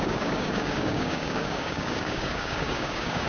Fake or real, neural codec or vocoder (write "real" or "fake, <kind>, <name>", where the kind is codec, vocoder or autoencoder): fake, codec, DAC